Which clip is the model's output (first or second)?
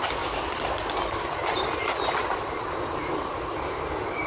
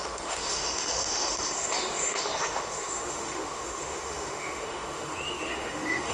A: second